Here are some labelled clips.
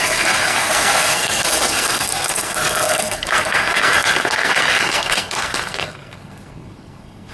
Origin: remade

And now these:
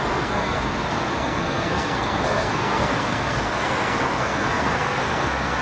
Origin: remade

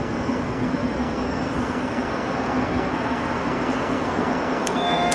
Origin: remade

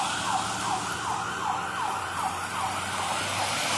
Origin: recorded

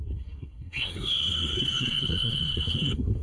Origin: remade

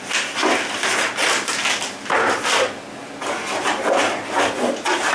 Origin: recorded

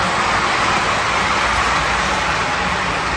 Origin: recorded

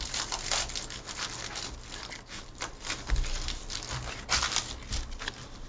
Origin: recorded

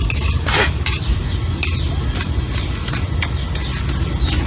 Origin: recorded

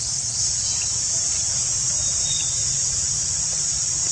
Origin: recorded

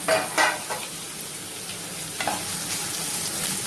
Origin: recorded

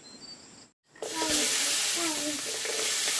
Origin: recorded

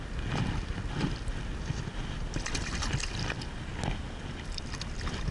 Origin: recorded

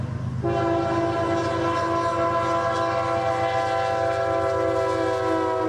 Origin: recorded